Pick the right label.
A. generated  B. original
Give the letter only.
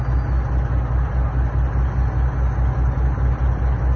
B